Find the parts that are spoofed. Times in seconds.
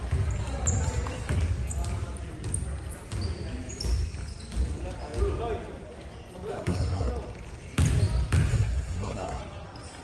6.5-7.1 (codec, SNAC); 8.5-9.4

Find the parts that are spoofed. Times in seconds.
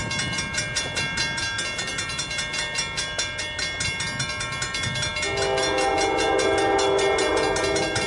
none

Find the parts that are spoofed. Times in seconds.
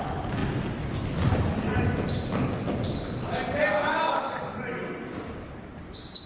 none